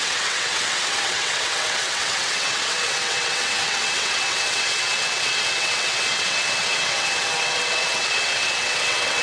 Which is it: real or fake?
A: fake